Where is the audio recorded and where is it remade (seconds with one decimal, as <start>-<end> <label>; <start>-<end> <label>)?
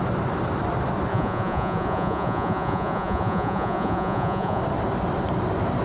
0.0-1.1 recorded; 1.1-4.6 remade; 4.6-5.8 recorded